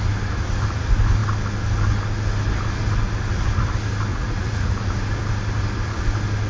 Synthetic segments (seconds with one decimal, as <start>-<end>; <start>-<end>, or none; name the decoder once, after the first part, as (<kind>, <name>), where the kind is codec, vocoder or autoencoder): 4.1-4.9 (vocoder, Vocos)